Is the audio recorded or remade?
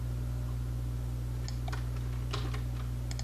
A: recorded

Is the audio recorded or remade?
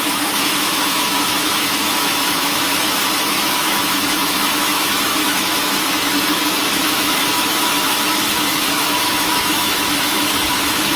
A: remade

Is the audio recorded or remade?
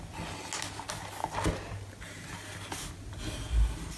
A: recorded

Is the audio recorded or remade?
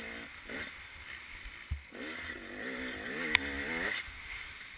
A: recorded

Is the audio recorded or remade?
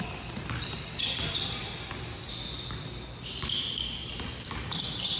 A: recorded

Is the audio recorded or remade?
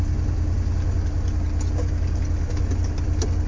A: recorded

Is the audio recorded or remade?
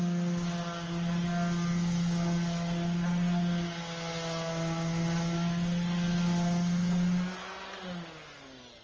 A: recorded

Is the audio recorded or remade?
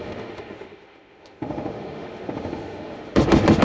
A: remade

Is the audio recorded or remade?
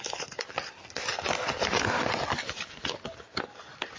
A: recorded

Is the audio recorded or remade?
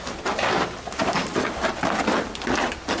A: recorded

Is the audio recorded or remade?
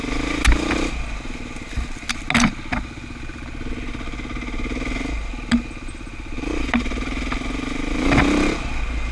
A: recorded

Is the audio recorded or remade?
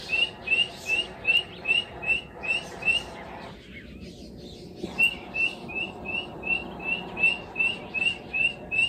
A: recorded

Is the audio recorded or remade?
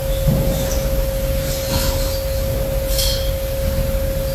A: recorded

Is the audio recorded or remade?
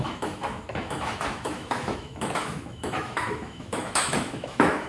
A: remade